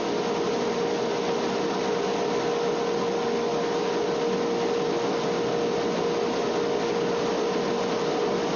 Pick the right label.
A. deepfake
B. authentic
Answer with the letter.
B